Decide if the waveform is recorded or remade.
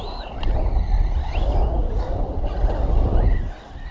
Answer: recorded